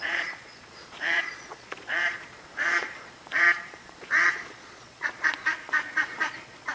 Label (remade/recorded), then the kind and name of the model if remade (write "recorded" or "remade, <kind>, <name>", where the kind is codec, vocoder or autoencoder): remade, vocoder, Vocos